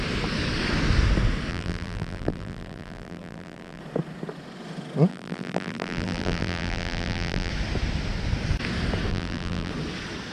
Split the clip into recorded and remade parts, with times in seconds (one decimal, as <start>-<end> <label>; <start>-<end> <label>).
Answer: 0.0-1.5 recorded; 1.5-3.8 remade; 3.8-5.1 recorded; 5.1-7.5 remade; 7.5-9.1 recorded; 9.1-9.7 remade; 9.7-10.3 recorded